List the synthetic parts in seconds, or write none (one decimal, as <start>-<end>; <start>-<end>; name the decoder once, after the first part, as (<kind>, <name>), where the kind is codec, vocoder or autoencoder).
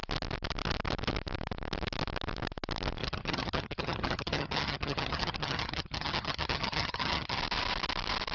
3.0-7.4 (vocoder, HiFi-GAN)